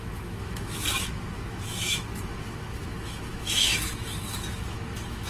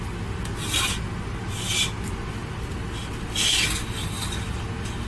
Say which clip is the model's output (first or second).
first